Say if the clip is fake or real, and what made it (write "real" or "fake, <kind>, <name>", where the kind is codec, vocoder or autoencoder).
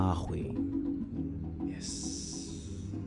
fake, vocoder, Vocos